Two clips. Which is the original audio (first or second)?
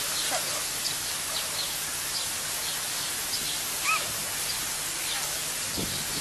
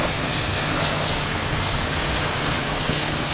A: first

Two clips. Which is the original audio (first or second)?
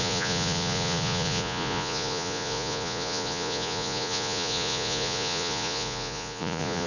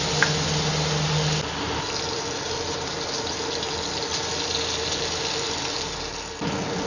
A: second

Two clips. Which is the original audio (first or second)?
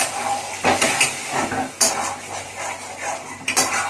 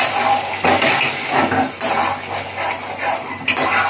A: second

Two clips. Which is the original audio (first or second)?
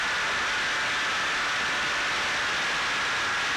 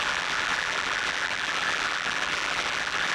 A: first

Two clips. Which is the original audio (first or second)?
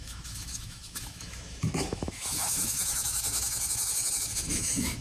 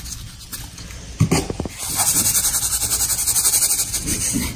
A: second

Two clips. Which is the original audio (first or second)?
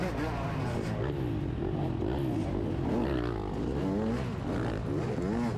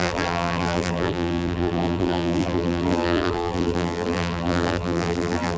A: first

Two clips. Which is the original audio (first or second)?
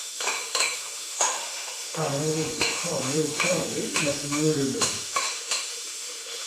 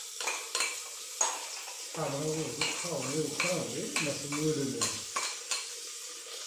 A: second